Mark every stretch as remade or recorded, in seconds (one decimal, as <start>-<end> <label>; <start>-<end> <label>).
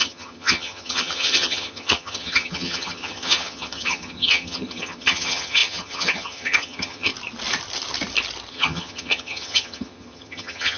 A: 0.0-7.1 remade; 7.1-8.5 recorded; 8.5-10.8 remade